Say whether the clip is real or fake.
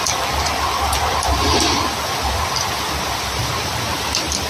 real